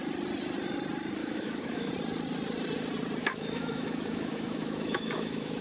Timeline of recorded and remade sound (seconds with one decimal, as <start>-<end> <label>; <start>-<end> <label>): 0.0-1.2 recorded; 1.2-1.9 remade; 1.9-3.2 recorded; 3.2-5.6 remade